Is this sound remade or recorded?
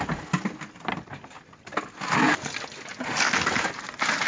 recorded